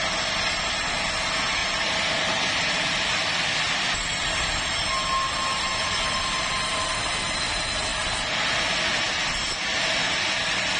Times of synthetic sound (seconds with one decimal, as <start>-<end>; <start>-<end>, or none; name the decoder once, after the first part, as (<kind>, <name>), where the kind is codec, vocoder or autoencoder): 1.6-3.0 (vocoder, BigVGAN v2); 5.7-6.8; 7.9-8.6